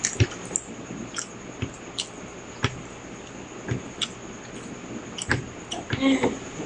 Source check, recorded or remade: recorded